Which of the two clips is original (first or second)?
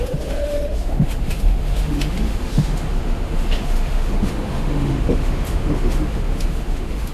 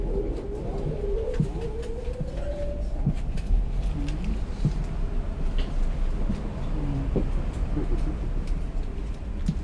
second